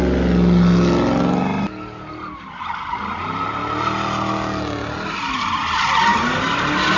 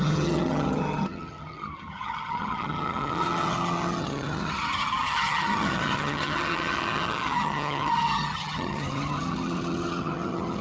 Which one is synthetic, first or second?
second